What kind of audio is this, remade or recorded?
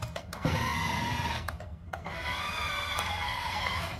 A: remade